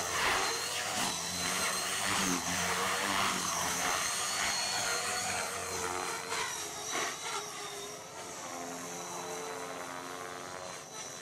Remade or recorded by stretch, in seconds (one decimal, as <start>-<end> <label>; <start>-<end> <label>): 0.0-5.6 remade; 5.6-6.4 recorded; 6.4-8.5 remade; 8.5-11.2 recorded

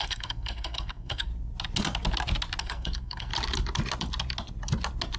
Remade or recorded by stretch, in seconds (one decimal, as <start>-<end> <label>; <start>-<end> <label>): 0.0-1.3 remade; 1.3-2.6 recorded; 2.6-3.3 remade; 3.3-5.2 recorded

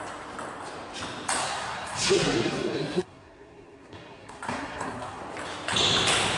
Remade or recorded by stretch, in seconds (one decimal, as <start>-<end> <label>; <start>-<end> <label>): 0.0-1.4 recorded; 1.4-5.2 remade; 5.2-6.4 recorded

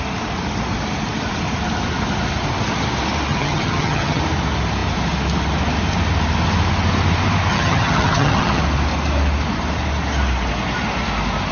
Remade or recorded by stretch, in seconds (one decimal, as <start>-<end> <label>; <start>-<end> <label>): 0.0-3.3 recorded; 3.3-4.2 remade; 4.2-7.5 recorded; 7.5-8.6 remade; 8.6-11.5 recorded

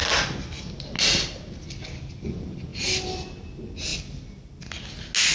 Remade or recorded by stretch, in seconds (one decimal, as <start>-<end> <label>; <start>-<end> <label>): 0.0-2.7 recorded; 2.7-3.3 remade; 3.3-5.3 recorded

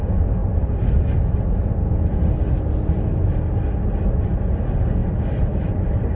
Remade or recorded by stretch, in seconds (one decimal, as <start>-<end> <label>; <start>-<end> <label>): 0.0-6.1 recorded

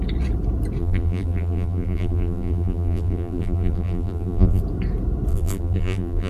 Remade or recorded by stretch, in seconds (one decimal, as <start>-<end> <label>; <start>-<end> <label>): 0.0-0.8 recorded; 0.8-4.6 remade; 4.6-5.3 recorded; 5.3-6.3 remade

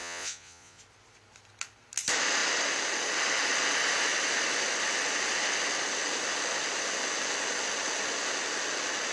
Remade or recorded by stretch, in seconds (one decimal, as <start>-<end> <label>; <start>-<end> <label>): 0.0-0.8 remade; 0.8-9.1 recorded